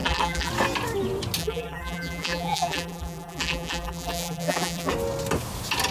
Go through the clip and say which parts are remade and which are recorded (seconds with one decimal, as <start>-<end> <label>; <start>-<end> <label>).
0.0-0.5 remade; 0.5-1.4 recorded; 1.4-4.9 remade; 4.9-5.9 recorded